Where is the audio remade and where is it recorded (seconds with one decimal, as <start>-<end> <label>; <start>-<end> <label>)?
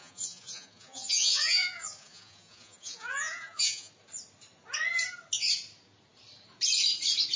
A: 0.0-3.9 remade; 3.9-7.4 recorded